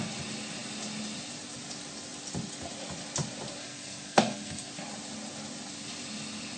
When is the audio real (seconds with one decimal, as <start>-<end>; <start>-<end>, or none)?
0.0-3.6; 4.7-6.6